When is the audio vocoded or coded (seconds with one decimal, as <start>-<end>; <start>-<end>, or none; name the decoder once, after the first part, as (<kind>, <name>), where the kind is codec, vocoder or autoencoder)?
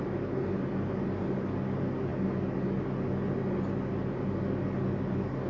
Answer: none